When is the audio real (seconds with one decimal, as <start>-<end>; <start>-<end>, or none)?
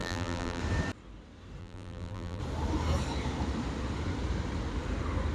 0.6-1.6; 2.4-5.3